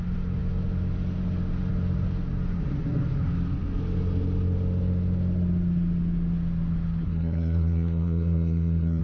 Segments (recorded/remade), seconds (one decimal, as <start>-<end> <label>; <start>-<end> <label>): 0.0-7.0 recorded; 7.0-9.0 remade